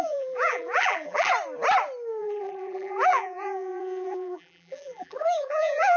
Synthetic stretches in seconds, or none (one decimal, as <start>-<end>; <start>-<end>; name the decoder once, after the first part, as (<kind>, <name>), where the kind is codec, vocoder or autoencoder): 0.0-1.3 (vocoder, BigVGAN v2); 2.2-6.0